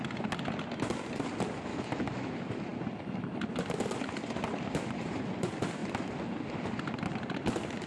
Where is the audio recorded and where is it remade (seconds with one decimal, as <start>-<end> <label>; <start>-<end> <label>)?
0.0-1.7 recorded; 1.7-2.3 remade; 2.3-7.9 recorded